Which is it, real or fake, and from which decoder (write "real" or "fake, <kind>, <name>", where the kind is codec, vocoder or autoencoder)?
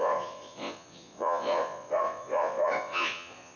fake, vocoder, Vocos